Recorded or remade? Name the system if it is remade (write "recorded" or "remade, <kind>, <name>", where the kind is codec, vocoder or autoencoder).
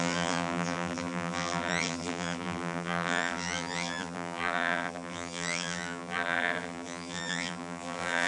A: remade, vocoder, BigVGAN v2